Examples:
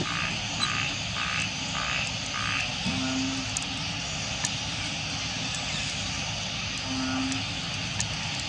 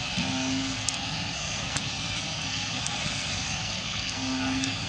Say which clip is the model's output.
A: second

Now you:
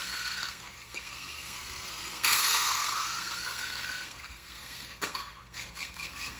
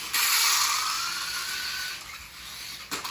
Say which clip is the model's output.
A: first